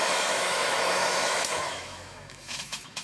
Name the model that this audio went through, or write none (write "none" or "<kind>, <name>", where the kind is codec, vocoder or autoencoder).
autoencoder, DAC-VAE